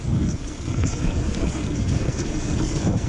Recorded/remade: remade